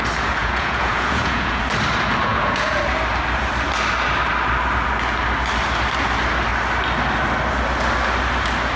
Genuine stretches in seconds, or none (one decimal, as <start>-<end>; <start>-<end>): 0.0-0.4; 1.6-2.3; 2.8-8.8